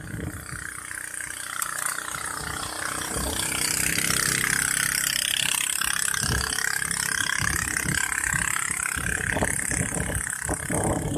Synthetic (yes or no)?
no